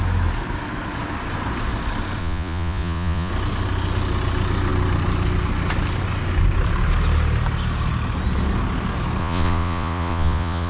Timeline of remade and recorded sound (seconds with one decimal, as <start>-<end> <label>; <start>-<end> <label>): 0.0-2.2 recorded; 2.2-3.3 remade; 3.3-9.2 recorded; 9.2-10.7 remade